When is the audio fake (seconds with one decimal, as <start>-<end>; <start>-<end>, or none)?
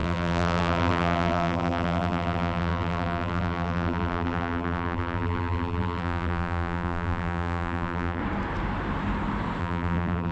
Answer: 0.0-8.2; 9.6-10.3